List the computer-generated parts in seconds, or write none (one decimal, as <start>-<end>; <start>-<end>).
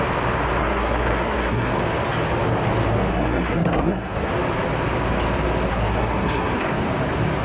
0.6-1.7; 3.1-4.3; 5.7-6.5